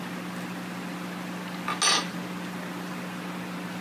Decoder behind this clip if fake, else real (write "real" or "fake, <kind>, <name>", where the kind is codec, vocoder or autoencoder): real